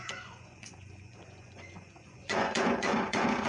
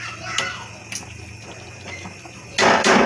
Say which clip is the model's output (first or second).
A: first